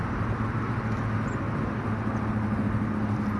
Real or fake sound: real